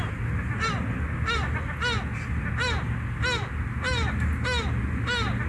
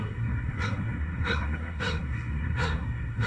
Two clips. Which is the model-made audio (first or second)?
second